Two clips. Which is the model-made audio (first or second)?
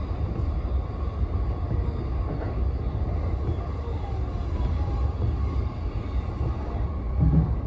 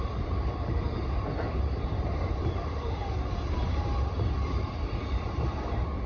second